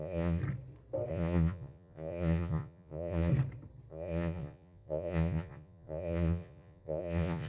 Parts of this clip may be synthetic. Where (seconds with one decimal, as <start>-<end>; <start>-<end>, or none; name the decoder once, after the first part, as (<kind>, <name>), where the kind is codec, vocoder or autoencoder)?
0.0-0.4 (vocoder, Vocos); 1.1-3.3; 3.9-7.5